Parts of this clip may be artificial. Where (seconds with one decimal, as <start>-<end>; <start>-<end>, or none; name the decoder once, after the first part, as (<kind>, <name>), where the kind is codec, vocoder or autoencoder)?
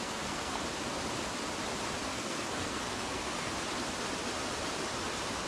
0.0-0.6 (codec, SNAC); 2.1-3.5